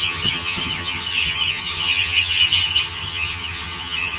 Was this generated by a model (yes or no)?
yes